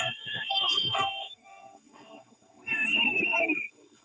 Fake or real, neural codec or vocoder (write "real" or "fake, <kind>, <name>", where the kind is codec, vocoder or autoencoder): fake, codec, SNAC